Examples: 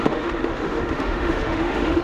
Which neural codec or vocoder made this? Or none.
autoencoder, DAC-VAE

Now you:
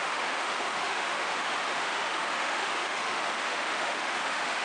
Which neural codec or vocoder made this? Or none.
autoencoder, DAC-VAE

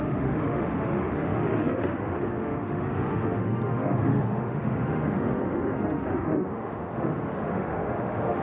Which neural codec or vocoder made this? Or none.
autoencoder, DAC-VAE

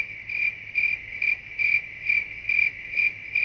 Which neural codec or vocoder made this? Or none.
none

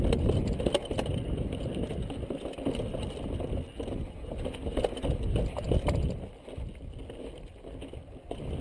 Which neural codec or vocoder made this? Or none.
none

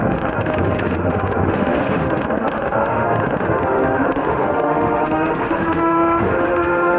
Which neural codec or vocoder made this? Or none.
autoencoder, DAC-VAE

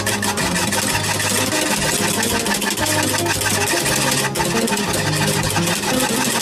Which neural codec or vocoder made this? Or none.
none